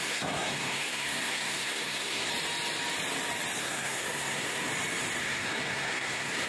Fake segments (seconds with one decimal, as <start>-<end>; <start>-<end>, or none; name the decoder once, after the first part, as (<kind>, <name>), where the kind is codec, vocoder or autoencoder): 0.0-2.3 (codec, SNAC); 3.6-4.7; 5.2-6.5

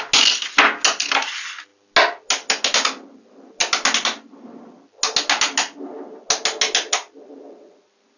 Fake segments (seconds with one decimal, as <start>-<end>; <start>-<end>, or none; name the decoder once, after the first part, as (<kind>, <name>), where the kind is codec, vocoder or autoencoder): none

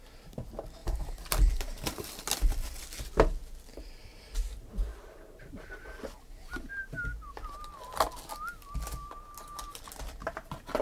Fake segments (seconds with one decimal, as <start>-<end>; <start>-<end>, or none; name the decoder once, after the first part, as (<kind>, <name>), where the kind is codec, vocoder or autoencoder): 0.8-2.8 (vocoder, BigVGAN v2); 4.9-5.4; 9.7-10.8

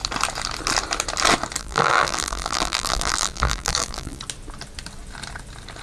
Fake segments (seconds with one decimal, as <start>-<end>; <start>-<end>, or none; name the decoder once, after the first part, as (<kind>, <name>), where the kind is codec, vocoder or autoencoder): 1.6-4.2 (vocoder, BigVGAN v2)

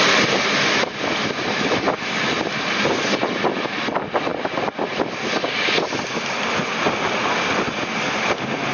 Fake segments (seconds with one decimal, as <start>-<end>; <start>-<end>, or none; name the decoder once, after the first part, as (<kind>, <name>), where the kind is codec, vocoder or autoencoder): none

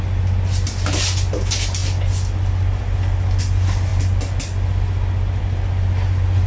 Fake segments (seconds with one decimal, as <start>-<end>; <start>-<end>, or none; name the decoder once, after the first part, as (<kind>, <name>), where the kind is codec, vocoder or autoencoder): none

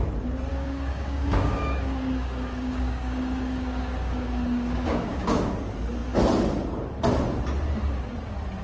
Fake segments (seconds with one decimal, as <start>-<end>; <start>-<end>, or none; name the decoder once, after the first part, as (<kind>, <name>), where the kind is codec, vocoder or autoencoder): 0.5-5.5 (codec, DAC)

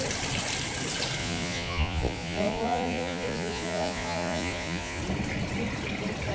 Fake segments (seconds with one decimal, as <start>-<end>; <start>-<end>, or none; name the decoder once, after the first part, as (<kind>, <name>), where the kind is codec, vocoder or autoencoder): 1.2-5.0 (vocoder, Vocos)